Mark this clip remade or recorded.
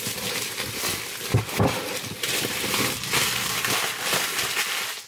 recorded